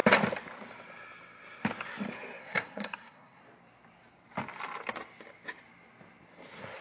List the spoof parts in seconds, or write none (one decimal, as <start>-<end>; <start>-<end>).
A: 2.4-3.4